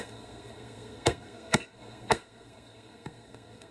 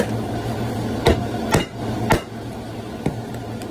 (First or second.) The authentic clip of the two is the second